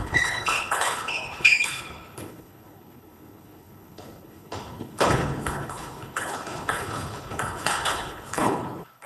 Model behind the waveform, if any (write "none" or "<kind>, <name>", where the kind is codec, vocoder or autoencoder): codec, HILCodec